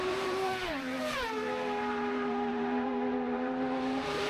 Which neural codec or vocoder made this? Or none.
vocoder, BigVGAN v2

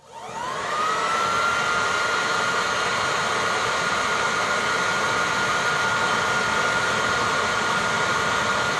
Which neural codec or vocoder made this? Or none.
none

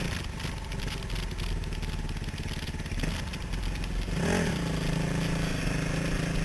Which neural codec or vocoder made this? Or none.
none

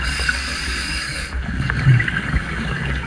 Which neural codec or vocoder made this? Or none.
codec, DAC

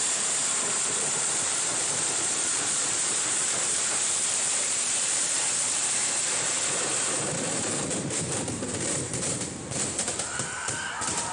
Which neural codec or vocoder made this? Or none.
vocoder, BigVGAN v2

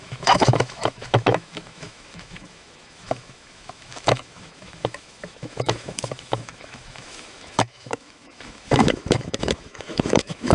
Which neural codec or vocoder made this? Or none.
autoencoder, DAC-VAE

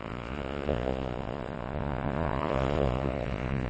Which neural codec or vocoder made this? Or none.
vocoder, Vocos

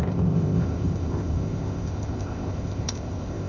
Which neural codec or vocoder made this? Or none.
codec, ZipCodec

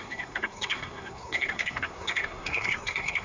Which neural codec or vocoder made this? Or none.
codec, SNAC